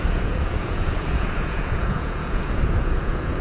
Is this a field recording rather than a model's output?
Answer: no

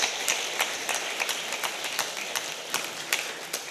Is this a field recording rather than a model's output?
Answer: yes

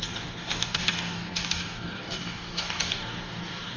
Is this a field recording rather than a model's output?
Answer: no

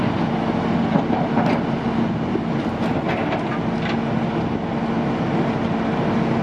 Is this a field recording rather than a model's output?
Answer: yes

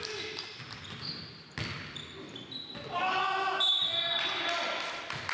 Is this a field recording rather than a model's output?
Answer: yes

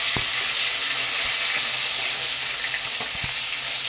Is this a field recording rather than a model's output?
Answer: yes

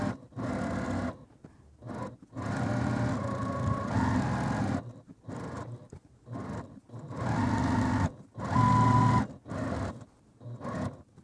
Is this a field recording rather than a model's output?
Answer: yes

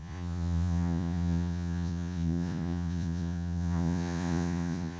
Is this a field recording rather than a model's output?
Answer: no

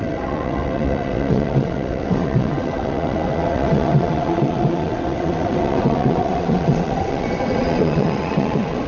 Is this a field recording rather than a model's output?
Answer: no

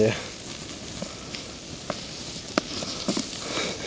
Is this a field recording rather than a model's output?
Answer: yes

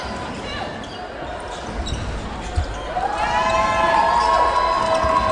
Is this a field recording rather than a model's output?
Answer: yes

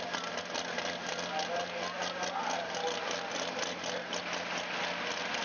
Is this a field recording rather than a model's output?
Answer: yes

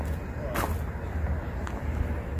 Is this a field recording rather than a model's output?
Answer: yes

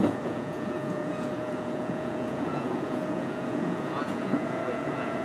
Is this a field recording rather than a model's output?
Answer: no